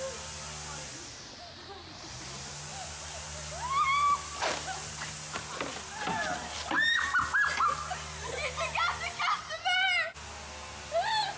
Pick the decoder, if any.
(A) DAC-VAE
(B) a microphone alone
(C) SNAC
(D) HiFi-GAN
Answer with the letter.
B